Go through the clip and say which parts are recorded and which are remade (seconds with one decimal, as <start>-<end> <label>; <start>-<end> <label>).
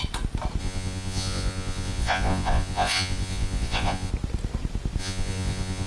0.0-0.6 recorded; 0.6-4.1 remade; 4.1-5.0 recorded; 5.0-5.9 remade